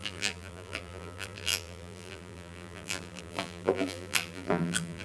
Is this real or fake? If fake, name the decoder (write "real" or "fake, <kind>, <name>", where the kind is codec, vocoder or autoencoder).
fake, vocoder, BigVGAN v2